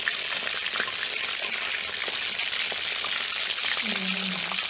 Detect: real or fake real